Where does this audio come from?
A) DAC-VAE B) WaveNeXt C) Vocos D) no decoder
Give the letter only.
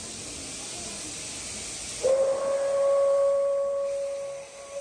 D